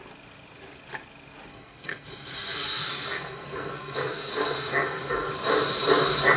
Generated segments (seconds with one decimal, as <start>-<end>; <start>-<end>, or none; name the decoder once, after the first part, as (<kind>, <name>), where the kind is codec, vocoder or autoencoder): 1.5-5.3 (codec, SNAC)